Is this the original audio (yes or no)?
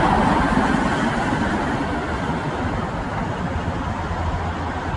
yes